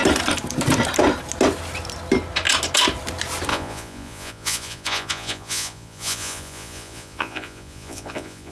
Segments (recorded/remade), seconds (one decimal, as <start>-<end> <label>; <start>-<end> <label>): 0.0-3.5 recorded; 3.5-8.5 remade